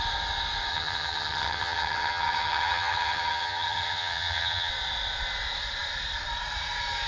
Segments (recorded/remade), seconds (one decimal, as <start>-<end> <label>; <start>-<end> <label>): 0.0-0.7 recorded; 0.7-4.7 remade; 4.7-7.1 recorded